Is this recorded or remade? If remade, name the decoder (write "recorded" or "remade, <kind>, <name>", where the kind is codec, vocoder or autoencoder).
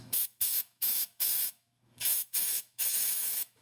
remade, autoencoder, DAC-VAE